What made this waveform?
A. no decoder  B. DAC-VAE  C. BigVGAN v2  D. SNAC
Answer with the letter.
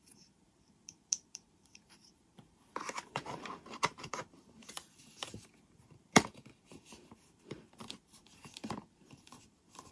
C